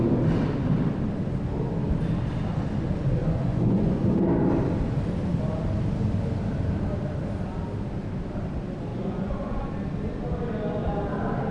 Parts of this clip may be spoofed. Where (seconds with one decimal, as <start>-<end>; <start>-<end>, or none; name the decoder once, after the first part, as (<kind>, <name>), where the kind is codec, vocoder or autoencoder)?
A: 3.2-4.1 (vocoder, Vocos); 8.9-9.7